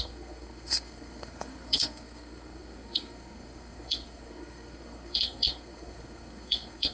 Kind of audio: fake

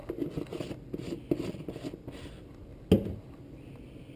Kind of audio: real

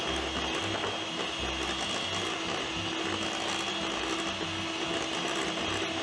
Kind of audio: real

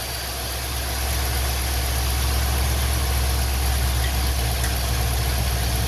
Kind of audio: real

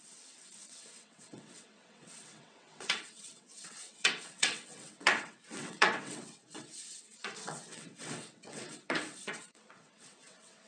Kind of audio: fake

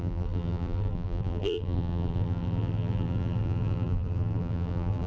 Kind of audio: fake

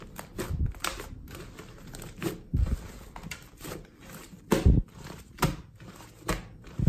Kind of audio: real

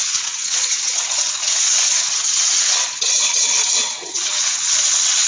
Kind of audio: fake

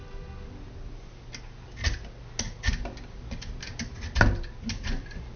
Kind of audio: real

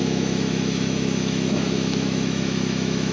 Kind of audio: fake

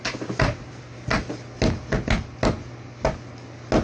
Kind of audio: real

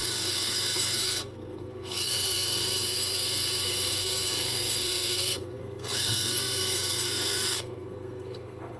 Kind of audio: fake